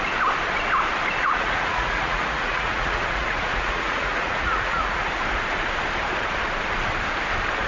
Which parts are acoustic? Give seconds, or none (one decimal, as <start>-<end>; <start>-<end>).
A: 0.0-1.2; 5.0-7.7